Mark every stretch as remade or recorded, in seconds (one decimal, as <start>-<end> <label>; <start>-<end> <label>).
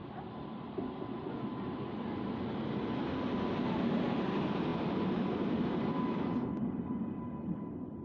0.0-8.0 recorded